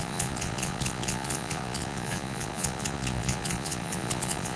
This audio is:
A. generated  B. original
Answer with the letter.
A